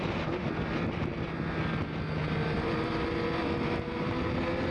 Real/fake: real